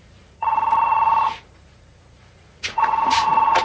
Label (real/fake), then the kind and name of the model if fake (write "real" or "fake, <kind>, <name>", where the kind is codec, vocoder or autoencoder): fake, vocoder, Vocos